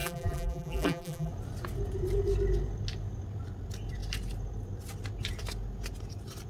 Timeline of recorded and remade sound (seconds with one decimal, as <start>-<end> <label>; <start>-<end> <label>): 0.0-1.3 remade; 1.3-6.5 recorded